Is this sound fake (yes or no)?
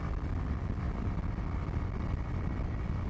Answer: no